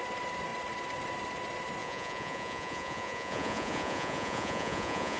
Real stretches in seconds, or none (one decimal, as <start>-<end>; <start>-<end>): 0.0-1.8